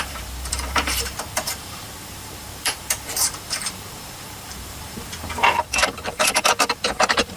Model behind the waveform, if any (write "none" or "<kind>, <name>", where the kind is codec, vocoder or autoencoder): vocoder, BigVGAN v2